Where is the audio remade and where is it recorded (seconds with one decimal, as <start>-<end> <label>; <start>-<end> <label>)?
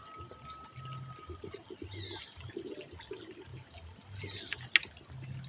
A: 0.0-5.5 recorded